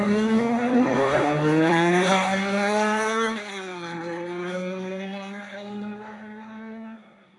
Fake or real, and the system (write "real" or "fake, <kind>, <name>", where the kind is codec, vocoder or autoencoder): fake, codec, SNAC